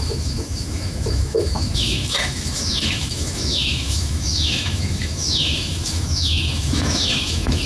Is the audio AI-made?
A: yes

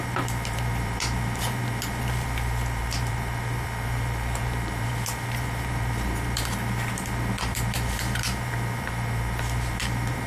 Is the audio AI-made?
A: yes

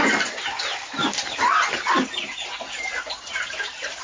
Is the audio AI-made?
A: no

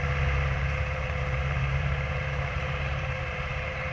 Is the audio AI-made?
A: yes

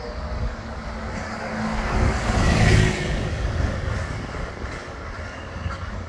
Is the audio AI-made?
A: yes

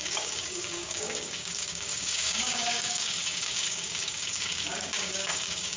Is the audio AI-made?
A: yes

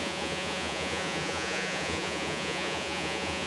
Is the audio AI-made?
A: yes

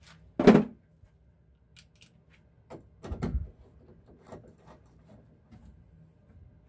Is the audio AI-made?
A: no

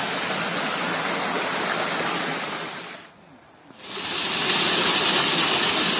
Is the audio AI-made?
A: no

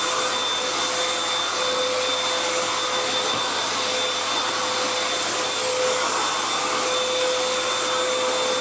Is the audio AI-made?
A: no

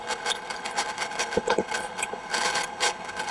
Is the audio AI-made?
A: yes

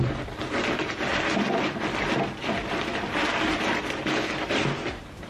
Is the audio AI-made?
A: no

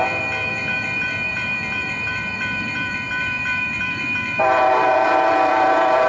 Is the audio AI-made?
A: yes